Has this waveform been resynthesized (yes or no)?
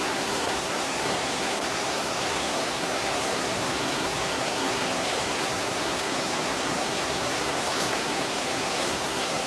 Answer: yes